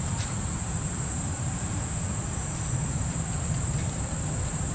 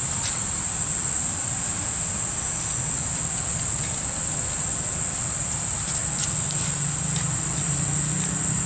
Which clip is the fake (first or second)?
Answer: first